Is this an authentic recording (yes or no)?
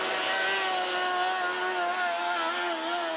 yes